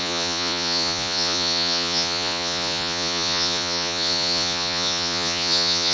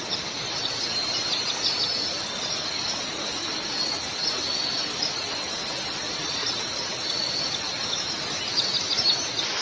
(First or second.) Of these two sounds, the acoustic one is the second